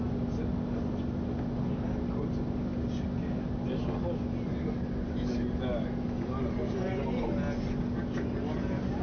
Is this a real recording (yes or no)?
yes